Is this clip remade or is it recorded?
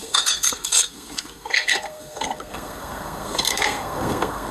remade